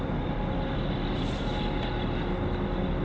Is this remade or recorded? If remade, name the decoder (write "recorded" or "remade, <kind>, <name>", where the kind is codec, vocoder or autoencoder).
recorded